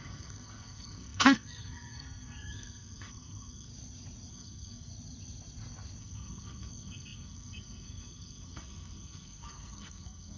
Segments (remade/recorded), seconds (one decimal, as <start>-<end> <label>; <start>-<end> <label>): 0.0-3.7 remade; 3.7-4.3 recorded; 4.3-4.9 remade; 4.9-6.0 recorded; 6.0-10.4 remade